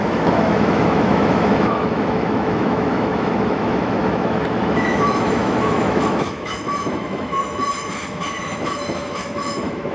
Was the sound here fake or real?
fake